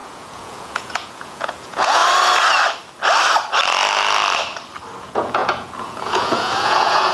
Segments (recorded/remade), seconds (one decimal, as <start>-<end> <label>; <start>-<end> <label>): 0.0-2.0 remade; 2.0-5.0 recorded; 5.0-7.1 remade